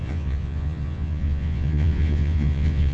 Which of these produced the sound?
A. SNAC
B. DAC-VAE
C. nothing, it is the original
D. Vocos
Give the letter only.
D